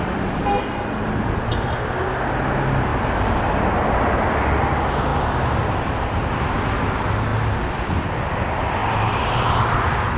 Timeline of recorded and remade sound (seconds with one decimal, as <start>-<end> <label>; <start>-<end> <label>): 0.0-8.8 recorded; 8.8-9.6 remade; 9.6-10.2 recorded